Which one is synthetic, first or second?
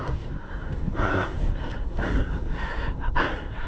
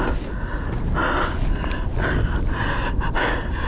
first